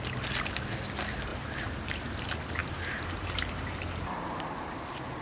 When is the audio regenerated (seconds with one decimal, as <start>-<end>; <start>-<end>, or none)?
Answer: 1.3-1.9; 2.6-5.2